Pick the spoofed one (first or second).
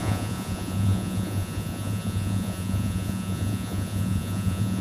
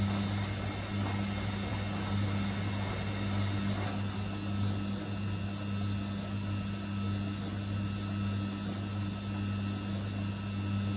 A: first